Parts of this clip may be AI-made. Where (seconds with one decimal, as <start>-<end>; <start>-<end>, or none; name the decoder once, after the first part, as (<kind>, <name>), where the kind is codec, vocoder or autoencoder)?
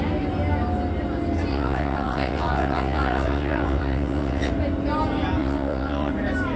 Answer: 1.5-4.5 (vocoder, WaveNeXt); 5.4-6.1